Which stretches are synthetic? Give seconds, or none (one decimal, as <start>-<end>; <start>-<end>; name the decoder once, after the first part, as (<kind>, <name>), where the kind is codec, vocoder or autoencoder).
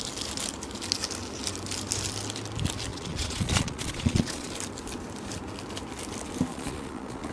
2.9-4.5 (vocoder, Vocos); 6.5-7.3